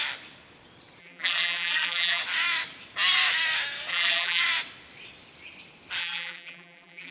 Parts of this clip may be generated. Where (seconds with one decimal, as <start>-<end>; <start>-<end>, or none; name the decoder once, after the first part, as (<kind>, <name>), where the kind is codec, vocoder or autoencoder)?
1.0-2.2 (vocoder, BigVGAN v2); 3.9-4.4; 6.0-7.1